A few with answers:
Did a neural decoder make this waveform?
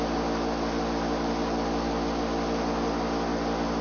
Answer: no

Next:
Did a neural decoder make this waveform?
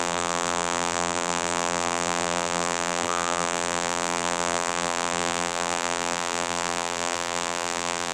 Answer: yes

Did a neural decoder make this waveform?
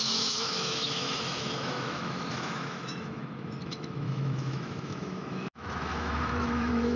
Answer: yes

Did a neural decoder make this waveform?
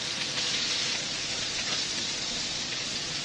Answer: yes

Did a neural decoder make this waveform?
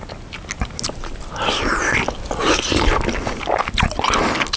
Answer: no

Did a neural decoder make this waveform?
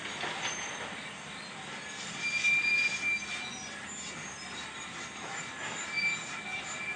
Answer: no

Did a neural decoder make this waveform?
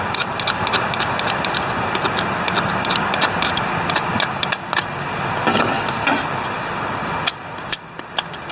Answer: no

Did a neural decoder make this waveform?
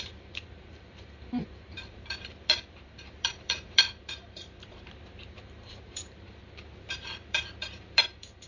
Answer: yes